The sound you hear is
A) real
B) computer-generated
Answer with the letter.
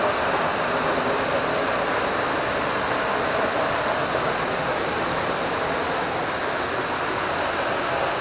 A